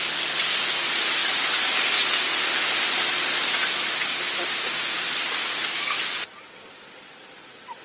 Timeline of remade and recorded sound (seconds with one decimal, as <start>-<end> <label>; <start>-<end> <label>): 0.0-7.8 recorded